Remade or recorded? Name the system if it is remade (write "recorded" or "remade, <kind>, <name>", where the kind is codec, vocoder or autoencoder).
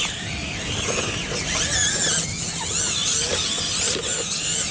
recorded